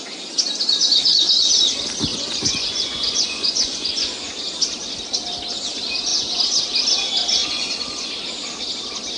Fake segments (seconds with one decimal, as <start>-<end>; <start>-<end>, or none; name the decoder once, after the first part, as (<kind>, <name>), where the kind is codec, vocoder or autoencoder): 2.1-4.3 (vocoder, Vocos); 6.1-6.6; 7.4-8.1

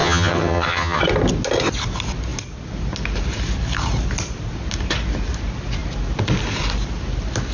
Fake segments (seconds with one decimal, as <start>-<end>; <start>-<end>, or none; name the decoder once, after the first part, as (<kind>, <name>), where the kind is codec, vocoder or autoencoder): 0.0-1.0 (vocoder, HiFi-GAN)